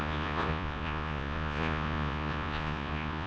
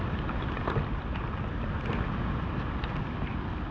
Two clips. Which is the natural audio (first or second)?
second